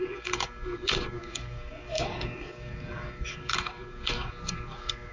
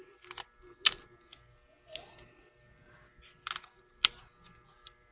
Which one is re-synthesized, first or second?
first